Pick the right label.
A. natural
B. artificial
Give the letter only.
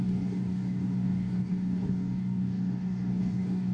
B